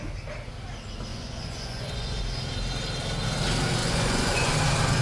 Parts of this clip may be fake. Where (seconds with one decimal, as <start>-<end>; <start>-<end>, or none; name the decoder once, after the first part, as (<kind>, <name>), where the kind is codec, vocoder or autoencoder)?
1.1-2.2 (vocoder, Vocos); 3.8-4.5